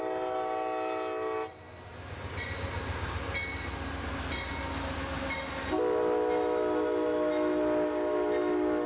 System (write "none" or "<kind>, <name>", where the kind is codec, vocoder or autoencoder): none